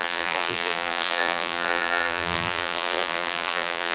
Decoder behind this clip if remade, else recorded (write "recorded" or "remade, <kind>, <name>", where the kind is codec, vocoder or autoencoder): remade, vocoder, BigVGAN v2